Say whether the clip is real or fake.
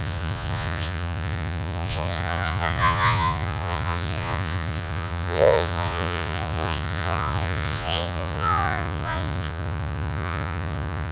fake